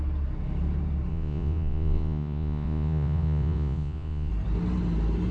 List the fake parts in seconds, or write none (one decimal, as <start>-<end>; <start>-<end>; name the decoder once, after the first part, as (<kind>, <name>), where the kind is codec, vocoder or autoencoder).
1.1-4.3 (vocoder, Vocos)